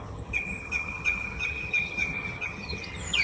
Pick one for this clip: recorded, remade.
remade